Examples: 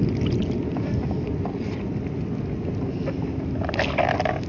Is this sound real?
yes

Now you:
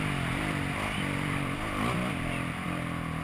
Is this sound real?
no